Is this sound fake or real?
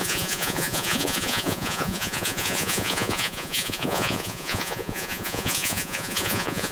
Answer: fake